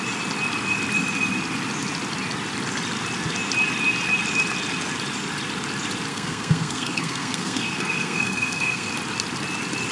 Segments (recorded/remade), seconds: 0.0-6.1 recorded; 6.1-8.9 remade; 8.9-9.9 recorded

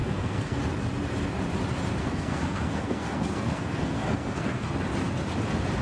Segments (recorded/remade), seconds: 0.0-0.6 remade; 0.6-2.0 recorded; 2.0-4.7 remade; 4.7-5.8 recorded

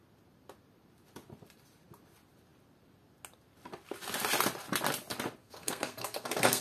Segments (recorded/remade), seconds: 0.0-5.4 recorded; 5.4-6.6 remade

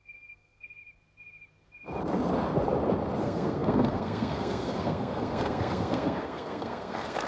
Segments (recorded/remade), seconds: 0.0-0.8 remade; 0.8-3.2 recorded; 3.2-7.3 remade

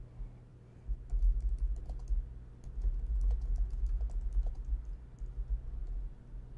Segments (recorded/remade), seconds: 0.0-6.6 recorded

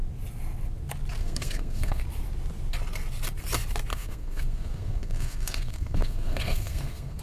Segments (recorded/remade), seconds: 0.0-1.2 recorded; 1.2-2.0 remade; 2.0-3.9 recorded; 3.9-7.2 remade

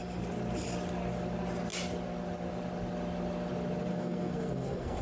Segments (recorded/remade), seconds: 0.0-3.9 recorded; 3.9-5.0 remade

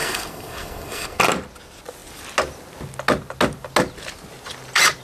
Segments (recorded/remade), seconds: 0.0-1.2 remade; 1.2-5.0 recorded